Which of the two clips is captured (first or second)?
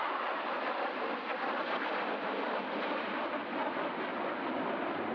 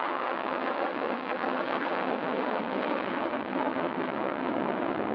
first